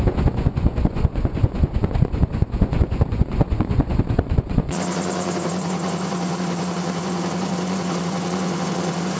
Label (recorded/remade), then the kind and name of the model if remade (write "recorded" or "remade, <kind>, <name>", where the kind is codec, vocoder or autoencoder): remade, vocoder, Vocos